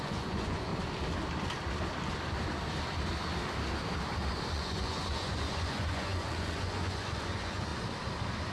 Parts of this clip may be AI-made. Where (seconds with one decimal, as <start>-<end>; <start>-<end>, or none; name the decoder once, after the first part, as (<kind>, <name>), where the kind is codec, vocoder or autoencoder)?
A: 0.0-0.7 (vocoder, Vocos); 4.5-7.7